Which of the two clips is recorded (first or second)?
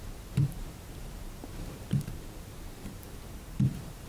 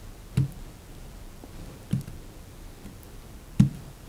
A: second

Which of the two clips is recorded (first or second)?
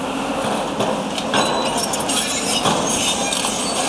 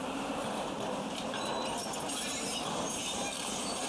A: first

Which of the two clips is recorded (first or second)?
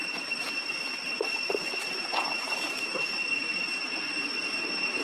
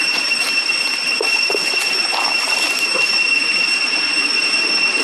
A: first